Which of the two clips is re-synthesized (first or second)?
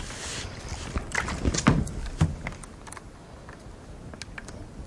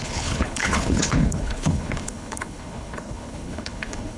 second